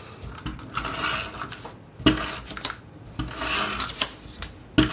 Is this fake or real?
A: real